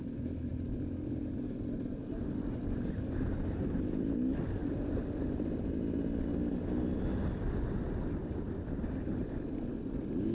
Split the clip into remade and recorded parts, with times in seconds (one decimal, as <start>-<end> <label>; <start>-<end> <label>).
0.0-4.6 recorded; 4.6-5.6 remade; 5.6-10.3 recorded